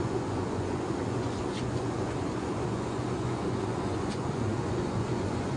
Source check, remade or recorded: remade